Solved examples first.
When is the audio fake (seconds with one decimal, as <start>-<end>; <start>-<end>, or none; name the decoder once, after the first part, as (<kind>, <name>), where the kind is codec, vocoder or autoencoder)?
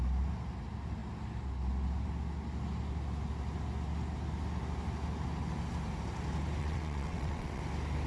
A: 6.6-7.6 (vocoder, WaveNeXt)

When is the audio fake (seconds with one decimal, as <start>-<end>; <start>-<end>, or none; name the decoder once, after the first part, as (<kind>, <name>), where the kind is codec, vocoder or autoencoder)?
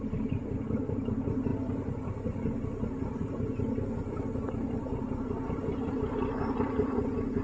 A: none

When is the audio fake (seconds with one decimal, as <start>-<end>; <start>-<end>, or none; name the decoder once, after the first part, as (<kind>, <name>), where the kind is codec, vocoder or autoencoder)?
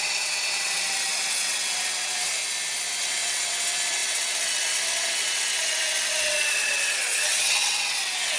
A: 0.0-2.4 (vocoder, WaveNeXt); 3.0-8.4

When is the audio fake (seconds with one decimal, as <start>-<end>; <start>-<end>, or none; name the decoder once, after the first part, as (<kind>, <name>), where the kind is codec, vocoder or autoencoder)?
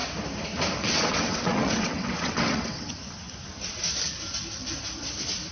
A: 0.8-2.9 (vocoder, WaveNeXt)